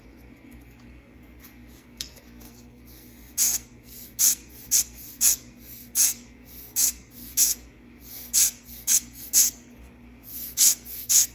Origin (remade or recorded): remade